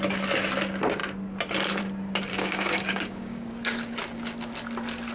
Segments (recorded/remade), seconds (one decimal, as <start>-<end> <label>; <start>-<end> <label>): 0.0-2.3 recorded; 2.3-3.5 remade; 3.5-5.1 recorded